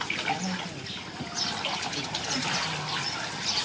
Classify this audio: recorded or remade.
recorded